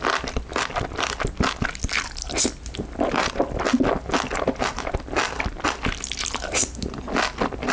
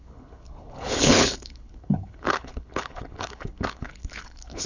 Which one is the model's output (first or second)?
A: second